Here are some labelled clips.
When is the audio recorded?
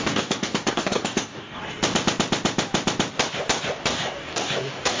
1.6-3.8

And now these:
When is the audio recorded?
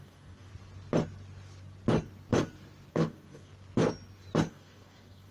0.5-2.9; 3.5-4.5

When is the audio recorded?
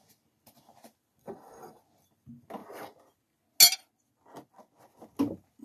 0.0-1.2; 1.8-5.6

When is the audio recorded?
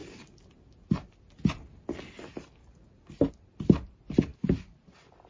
0.0-5.3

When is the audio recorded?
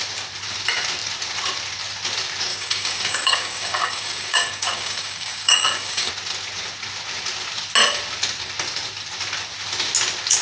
0.0-2.5; 6.1-10.4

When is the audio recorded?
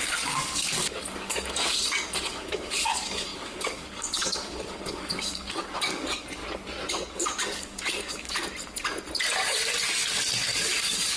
6.4-6.9; 8.4-10.5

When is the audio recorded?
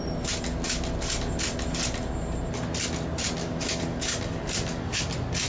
0.0-3.4; 5.0-5.5